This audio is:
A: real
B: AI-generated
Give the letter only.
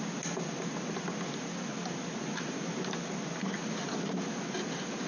A